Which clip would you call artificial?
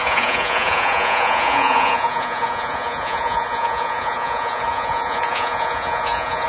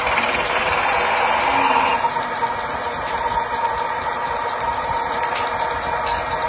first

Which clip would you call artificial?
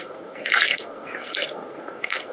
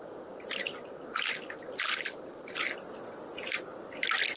first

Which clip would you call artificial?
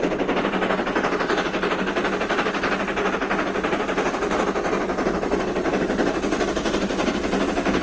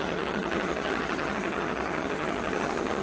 second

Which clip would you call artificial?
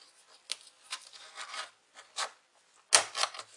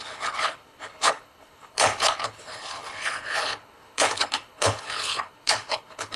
second